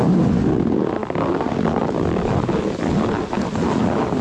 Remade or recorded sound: recorded